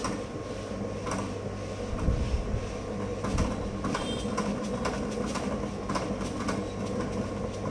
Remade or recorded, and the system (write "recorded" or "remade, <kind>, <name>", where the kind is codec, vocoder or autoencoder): recorded